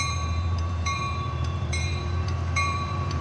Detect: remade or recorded remade